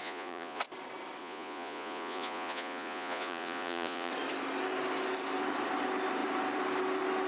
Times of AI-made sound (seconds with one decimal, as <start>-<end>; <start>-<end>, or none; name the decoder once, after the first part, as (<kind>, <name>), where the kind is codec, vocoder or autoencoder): 0.0-0.6 (vocoder, Vocos); 1.2-4.1